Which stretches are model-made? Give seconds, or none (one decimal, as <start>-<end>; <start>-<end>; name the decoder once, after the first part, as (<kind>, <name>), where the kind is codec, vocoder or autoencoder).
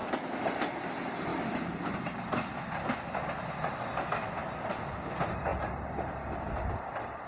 1.3-2.0 (vocoder, BigVGAN v2)